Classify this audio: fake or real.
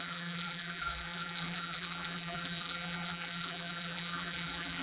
fake